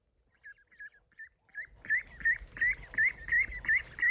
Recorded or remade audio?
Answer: recorded